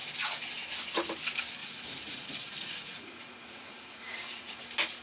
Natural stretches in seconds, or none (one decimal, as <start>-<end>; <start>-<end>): 0.0-1.6; 4.6-5.0